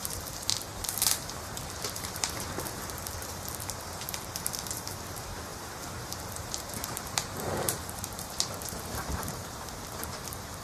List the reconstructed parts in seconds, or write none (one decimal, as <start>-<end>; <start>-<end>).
0.0-10.6